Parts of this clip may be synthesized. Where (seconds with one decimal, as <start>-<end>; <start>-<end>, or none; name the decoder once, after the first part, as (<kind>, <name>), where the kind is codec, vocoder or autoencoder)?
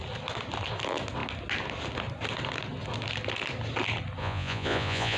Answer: 4.2-5.2 (vocoder, Vocos)